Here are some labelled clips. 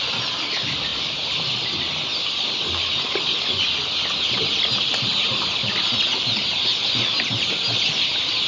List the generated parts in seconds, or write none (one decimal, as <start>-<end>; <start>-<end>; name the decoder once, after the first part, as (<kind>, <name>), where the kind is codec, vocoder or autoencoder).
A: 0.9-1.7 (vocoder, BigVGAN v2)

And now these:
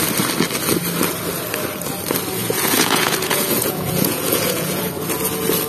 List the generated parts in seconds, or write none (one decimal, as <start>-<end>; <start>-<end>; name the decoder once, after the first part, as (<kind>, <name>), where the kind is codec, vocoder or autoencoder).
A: 2.4-4.8 (vocoder, Vocos)

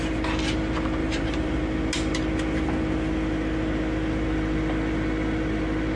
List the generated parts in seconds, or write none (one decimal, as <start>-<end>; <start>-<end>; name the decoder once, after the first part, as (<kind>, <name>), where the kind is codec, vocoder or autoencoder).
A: 1.0-1.6 (vocoder, BigVGAN v2)

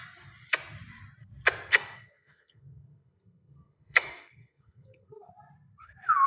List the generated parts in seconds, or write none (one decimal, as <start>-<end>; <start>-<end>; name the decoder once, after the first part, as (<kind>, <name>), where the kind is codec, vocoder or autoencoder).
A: 1.7-5.3 (codec, SNAC)

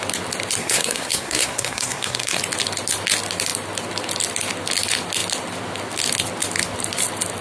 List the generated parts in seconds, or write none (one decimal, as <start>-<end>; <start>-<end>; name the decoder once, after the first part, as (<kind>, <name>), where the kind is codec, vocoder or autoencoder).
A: 0.6-2.4 (codec, SNAC)

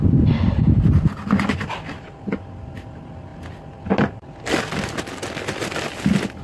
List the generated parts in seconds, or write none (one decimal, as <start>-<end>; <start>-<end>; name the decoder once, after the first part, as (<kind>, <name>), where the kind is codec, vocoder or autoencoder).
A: none

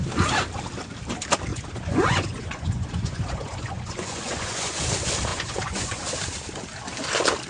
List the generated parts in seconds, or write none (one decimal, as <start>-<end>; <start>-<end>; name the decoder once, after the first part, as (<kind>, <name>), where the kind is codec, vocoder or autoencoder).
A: 1.5-4.8 (vocoder, Vocos); 5.3-6.0

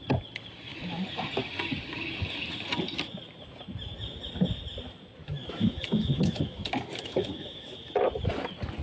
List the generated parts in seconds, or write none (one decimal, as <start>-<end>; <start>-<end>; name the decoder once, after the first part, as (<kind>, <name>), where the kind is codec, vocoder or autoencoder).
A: 5.2-8.0 (autoencoder, DAC-VAE)